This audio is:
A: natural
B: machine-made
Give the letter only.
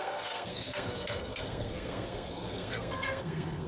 B